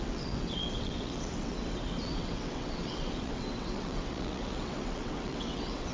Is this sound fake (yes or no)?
yes